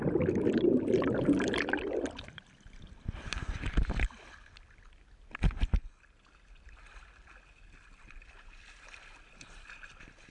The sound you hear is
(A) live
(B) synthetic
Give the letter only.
A